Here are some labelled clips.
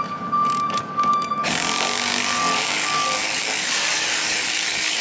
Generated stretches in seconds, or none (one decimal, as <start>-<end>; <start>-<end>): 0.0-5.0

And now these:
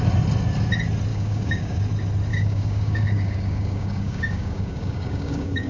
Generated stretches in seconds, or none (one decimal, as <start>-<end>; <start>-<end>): 1.1-1.8; 2.3-5.7

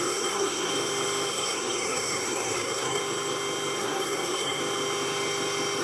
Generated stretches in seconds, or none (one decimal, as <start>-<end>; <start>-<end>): 0.0-0.7; 1.3-3.0; 3.8-4.6